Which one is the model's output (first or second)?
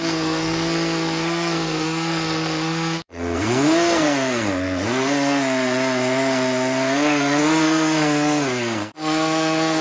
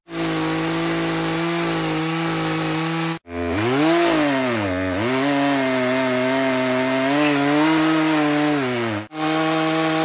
first